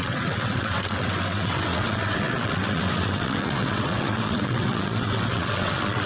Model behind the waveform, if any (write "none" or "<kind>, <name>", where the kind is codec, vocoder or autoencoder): vocoder, WaveNeXt